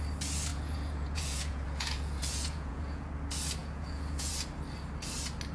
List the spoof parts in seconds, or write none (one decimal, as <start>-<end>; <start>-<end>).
0.5-3.1; 3.6-4.3